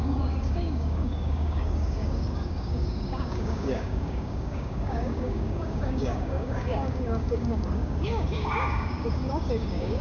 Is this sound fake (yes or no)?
yes